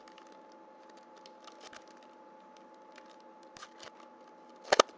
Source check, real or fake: real